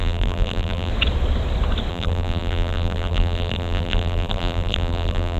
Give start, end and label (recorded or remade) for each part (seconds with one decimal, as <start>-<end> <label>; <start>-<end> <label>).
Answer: 0.0-0.9 remade; 0.9-1.9 recorded; 1.9-5.4 remade